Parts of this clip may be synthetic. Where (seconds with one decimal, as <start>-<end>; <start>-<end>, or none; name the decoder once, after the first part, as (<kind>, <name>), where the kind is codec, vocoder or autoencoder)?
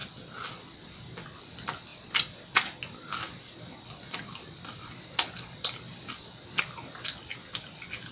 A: none